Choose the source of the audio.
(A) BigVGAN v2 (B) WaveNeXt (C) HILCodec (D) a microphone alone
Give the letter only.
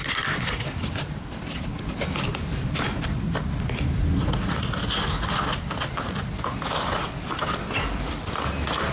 A